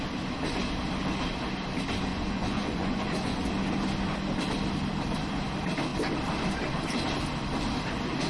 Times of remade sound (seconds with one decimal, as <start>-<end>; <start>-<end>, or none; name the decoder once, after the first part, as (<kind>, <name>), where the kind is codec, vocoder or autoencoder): 2.1-3.5 (vocoder, Vocos)